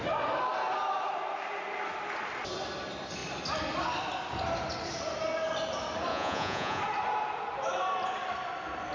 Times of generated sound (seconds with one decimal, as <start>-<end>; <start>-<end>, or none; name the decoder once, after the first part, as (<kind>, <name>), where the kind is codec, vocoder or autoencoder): 6.1-6.8 (vocoder, Vocos)